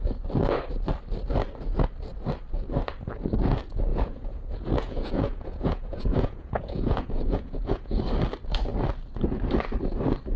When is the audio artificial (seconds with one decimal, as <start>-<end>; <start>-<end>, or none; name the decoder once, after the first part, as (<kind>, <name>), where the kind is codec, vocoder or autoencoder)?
3.9-8.0 (vocoder, Vocos)